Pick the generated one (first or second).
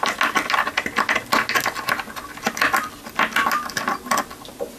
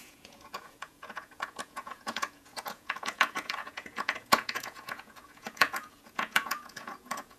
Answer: second